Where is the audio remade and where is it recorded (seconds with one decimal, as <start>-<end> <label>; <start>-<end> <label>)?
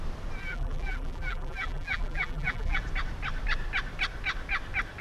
0.0-0.4 recorded; 0.4-2.8 remade; 2.8-5.0 recorded